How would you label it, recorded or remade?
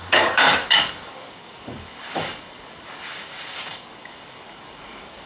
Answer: remade